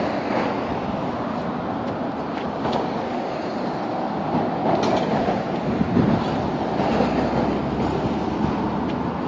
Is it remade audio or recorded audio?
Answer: recorded